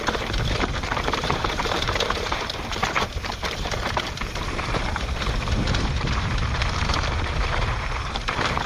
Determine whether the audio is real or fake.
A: fake